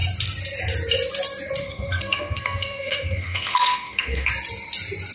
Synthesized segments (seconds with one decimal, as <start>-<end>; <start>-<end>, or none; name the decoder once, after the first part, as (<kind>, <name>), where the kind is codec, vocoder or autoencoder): 1.6-4.3 (codec, SNAC)